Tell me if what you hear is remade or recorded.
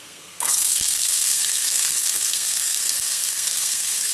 remade